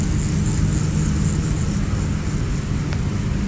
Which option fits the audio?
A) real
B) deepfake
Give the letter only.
A